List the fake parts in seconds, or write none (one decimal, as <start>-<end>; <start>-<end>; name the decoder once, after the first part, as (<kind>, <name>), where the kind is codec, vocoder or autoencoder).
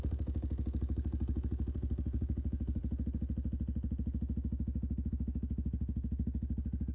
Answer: 0.0-2.8 (codec, DAC); 5.1-6.9